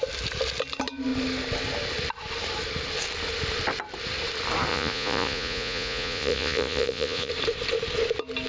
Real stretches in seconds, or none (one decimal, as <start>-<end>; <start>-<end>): 0.0-4.7; 7.3-8.5